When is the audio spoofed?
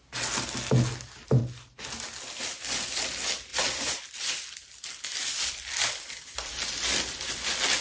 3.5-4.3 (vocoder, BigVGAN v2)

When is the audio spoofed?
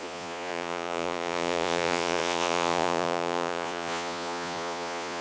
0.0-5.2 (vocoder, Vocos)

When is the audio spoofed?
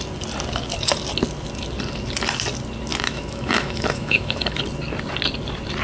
2.9-4.6 (autoencoder, DAC-VAE)